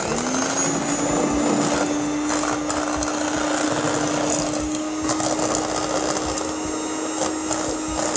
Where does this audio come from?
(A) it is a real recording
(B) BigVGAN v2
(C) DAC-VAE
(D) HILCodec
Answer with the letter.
A